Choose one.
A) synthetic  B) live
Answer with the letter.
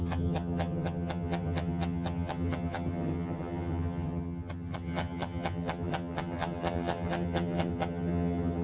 A